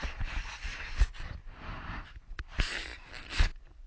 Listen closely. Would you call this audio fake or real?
fake